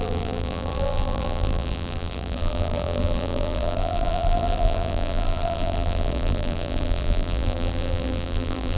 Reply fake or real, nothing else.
fake